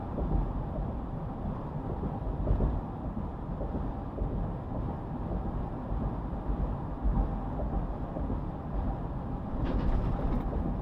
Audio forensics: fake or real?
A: fake